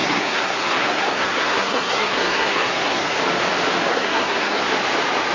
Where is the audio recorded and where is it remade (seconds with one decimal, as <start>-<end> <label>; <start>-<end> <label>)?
0.0-3.2 remade; 3.2-3.9 recorded; 3.9-4.6 remade; 4.6-5.3 recorded